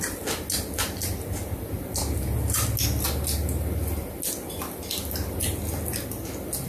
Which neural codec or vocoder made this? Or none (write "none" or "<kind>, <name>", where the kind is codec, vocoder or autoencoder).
none